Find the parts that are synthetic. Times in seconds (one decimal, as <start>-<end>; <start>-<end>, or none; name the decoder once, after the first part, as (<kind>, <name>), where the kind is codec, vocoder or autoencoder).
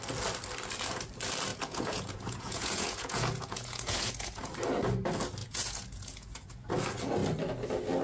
1.5-4.5 (vocoder, Vocos); 5.4-6.7